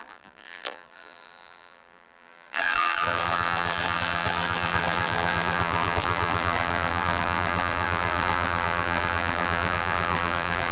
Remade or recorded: remade